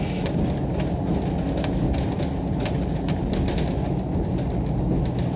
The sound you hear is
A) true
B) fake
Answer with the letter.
A